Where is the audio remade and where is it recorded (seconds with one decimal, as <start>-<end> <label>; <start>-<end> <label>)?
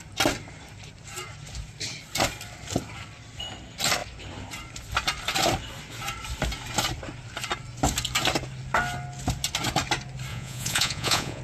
0.0-10.3 recorded; 10.3-11.4 remade